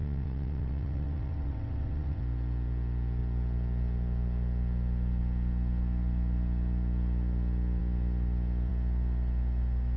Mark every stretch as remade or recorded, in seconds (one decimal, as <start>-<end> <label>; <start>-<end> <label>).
0.0-2.2 remade; 2.2-10.0 recorded